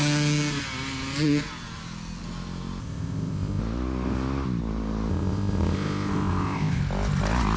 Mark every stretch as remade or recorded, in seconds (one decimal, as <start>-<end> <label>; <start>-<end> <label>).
0.0-2.8 recorded; 2.8-3.6 remade; 3.6-5.1 recorded; 5.1-6.8 remade; 6.8-7.6 recorded